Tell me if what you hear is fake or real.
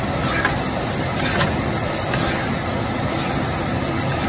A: real